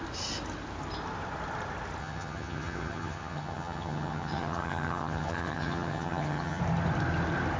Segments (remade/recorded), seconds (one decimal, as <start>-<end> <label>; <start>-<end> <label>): 0.0-2.0 recorded; 2.0-6.6 remade; 6.6-7.6 recorded